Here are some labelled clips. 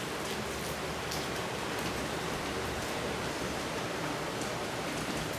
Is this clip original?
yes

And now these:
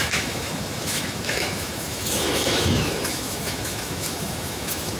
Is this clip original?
no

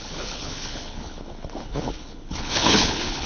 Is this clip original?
no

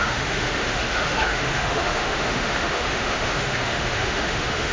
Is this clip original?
no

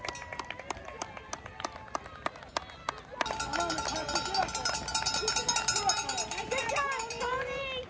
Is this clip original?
yes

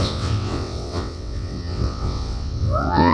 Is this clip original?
no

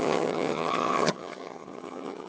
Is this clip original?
no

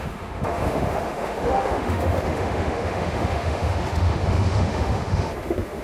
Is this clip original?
no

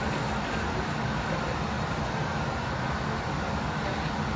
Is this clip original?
yes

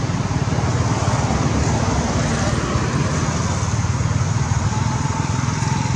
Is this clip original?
yes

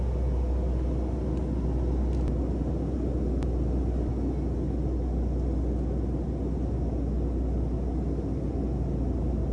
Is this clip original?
yes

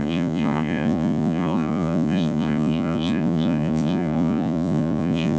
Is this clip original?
no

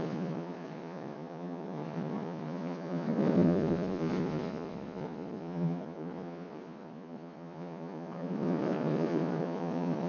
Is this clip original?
no